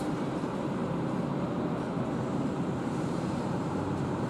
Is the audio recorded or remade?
remade